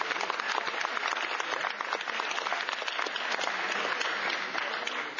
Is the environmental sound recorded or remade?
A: recorded